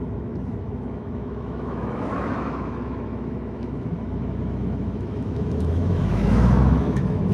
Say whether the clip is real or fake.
fake